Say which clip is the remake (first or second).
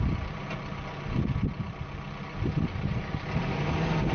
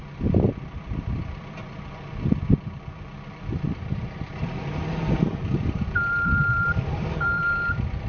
second